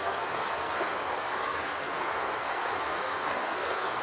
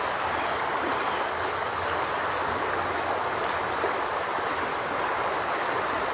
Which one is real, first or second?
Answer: second